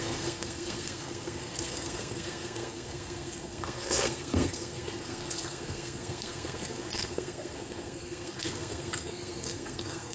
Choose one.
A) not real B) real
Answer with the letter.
A